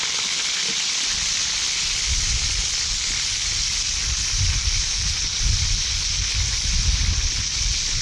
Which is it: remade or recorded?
recorded